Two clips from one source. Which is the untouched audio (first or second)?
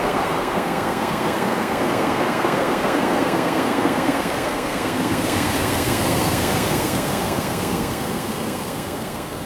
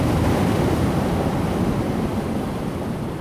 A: second